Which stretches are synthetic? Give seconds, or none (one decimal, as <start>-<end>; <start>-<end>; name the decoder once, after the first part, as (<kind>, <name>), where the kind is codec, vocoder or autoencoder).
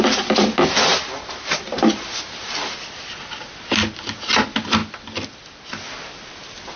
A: 0.9-3.0 (vocoder, BigVGAN v2)